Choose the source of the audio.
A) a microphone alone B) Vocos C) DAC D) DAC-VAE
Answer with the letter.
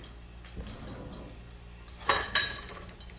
A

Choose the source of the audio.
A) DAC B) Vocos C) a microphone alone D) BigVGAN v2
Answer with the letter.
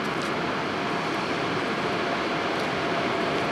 C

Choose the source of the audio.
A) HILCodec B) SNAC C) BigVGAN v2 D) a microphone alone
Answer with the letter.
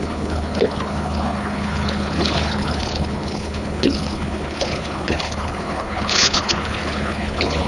A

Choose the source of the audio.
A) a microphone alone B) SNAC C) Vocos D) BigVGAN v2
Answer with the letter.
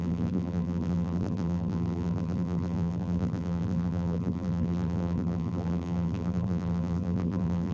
D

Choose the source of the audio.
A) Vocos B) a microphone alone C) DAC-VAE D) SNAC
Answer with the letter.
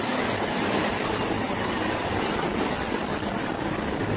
B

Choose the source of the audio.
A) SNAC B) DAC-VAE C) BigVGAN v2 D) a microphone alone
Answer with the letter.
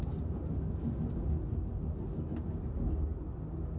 D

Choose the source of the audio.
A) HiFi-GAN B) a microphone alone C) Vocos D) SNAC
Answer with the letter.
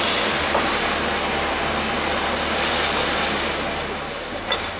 B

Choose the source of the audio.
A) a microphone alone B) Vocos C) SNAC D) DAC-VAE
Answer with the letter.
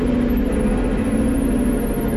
A